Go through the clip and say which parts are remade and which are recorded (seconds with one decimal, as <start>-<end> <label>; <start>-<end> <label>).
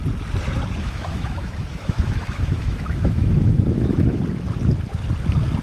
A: 0.0-0.8 recorded; 0.8-4.2 remade; 4.2-5.6 recorded